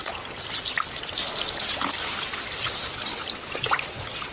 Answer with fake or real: real